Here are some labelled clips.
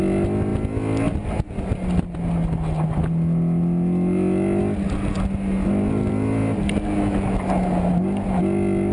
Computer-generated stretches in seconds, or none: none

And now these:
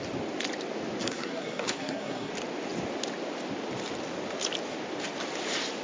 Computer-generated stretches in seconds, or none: 1.0-2.3 (codec, SNAC)

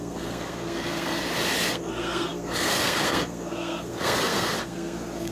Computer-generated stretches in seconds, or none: 0.0-1.2 (codec, SNAC); 1.7-5.3